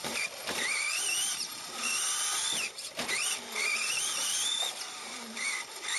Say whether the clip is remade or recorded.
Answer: remade